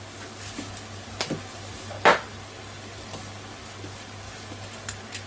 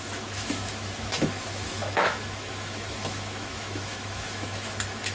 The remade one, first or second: second